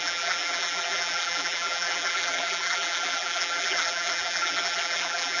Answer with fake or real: fake